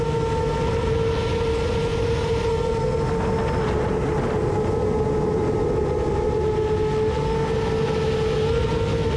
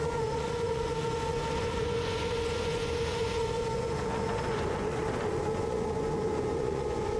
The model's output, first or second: second